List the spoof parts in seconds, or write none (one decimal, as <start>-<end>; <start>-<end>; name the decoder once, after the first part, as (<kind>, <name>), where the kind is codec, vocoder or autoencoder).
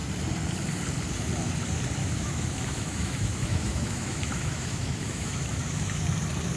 2.0-6.0 (autoencoder, DAC-VAE)